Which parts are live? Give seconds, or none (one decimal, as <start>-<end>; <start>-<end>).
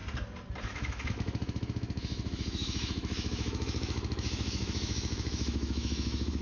0.0-0.6